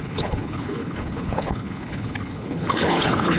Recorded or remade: remade